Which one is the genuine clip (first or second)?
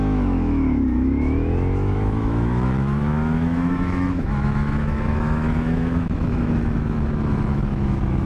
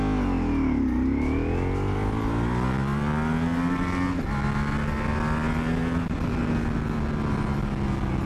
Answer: second